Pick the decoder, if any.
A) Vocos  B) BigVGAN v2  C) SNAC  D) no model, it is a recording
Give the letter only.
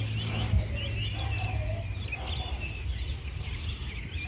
D